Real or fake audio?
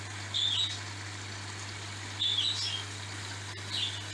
real